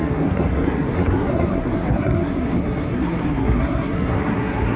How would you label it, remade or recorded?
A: remade